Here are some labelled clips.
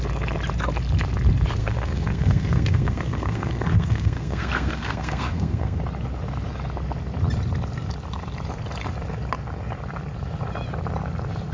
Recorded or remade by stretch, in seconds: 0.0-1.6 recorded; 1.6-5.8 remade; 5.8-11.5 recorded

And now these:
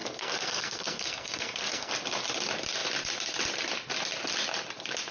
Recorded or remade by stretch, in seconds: 0.0-1.9 remade; 1.9-5.1 recorded